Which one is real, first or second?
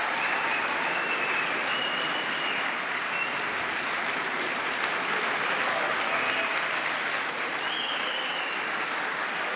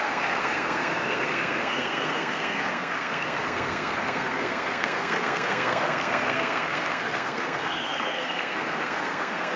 first